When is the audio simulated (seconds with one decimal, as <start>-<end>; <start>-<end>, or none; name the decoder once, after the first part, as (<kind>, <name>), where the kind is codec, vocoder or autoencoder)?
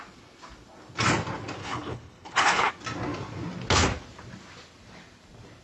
1.6-2.7 (codec, HILCodec)